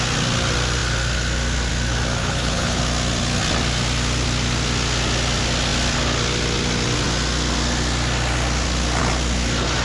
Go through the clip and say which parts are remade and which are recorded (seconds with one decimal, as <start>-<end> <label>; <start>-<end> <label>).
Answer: 0.0-2.2 recorded; 2.2-2.8 remade; 2.8-9.8 recorded